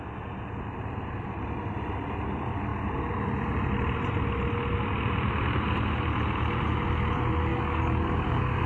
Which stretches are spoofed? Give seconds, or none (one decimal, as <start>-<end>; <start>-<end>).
7.5-8.7